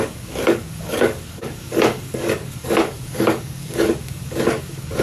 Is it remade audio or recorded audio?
remade